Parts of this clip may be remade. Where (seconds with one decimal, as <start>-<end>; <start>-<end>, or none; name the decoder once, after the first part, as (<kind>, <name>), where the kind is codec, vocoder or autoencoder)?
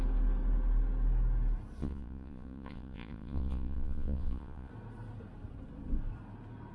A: 1.8-4.7 (vocoder, Vocos)